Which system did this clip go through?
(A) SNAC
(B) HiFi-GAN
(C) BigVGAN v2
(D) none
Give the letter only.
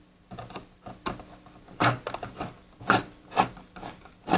D